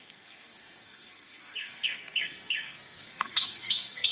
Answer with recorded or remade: remade